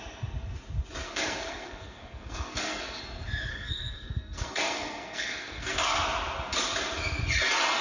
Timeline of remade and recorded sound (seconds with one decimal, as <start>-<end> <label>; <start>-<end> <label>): 0.0-1.0 recorded; 1.0-3.0 remade; 3.0-3.5 recorded; 3.5-6.0 remade; 6.0-7.8 recorded